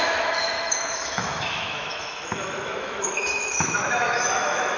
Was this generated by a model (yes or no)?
yes